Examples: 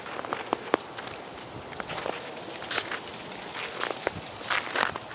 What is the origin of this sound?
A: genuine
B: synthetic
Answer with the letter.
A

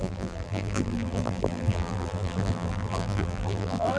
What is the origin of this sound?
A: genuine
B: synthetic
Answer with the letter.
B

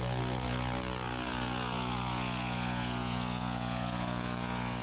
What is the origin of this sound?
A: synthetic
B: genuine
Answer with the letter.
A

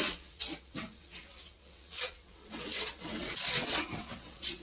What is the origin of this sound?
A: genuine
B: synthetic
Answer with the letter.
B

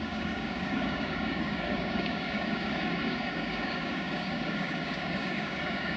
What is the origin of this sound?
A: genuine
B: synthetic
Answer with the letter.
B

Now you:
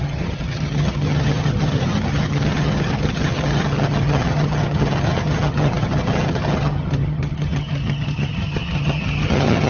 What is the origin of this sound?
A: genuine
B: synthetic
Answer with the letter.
B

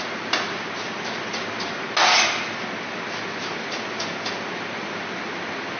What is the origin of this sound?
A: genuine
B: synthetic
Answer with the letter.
A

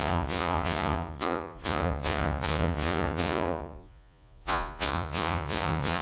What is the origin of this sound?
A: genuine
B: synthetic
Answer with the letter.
B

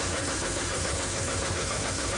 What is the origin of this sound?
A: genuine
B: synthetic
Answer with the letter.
B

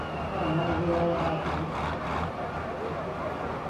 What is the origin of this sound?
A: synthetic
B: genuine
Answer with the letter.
B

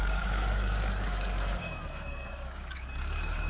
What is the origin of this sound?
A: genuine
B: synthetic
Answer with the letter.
B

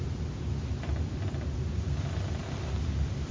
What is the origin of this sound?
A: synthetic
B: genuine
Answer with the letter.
B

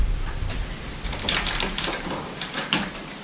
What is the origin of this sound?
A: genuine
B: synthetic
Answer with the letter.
B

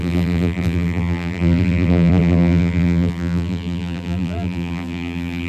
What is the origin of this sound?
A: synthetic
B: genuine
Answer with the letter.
A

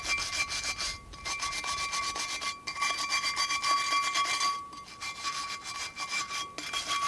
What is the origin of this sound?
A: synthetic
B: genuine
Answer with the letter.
B